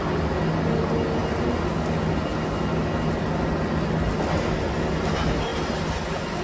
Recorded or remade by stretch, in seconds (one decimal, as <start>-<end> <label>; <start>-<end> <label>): 0.0-6.4 recorded